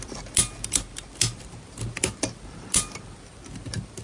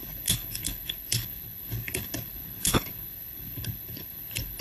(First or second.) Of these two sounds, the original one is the first